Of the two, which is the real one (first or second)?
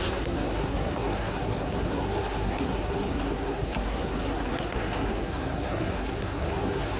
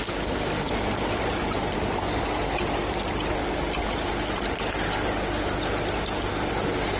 second